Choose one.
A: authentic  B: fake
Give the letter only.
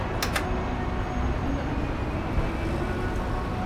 A